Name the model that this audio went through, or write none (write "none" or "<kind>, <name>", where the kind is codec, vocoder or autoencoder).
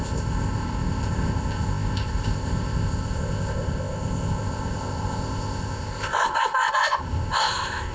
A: codec, ZipCodec